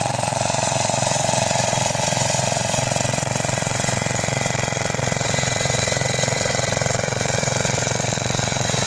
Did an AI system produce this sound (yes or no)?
yes